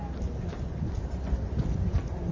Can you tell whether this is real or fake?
real